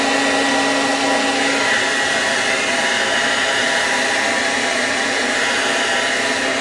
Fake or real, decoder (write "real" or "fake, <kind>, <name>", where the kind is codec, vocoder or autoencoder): real